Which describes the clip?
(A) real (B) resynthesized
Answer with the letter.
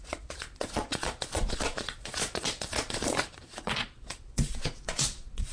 B